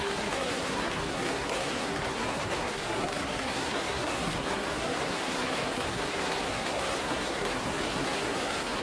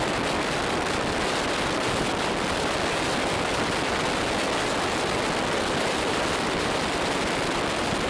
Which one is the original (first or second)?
second